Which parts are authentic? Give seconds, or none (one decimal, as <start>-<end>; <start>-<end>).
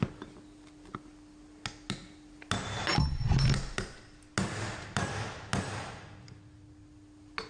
0.0-7.5